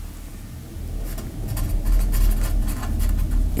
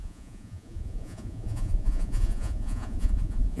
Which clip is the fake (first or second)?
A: second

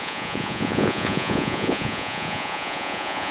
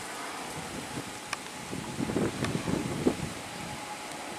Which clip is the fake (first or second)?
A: first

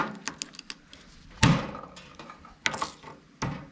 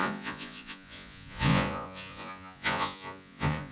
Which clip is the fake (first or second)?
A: second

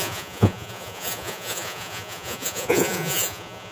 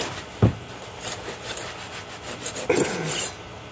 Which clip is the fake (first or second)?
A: first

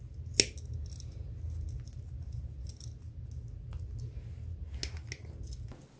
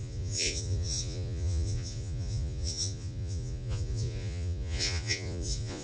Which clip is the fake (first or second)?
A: second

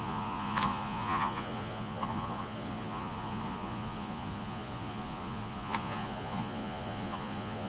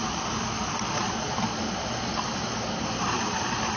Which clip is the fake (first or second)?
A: first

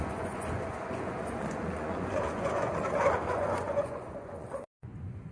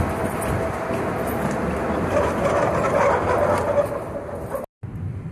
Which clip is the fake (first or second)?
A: first